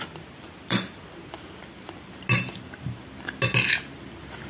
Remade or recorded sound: recorded